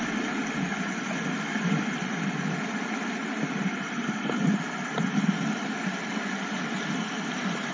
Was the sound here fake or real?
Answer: real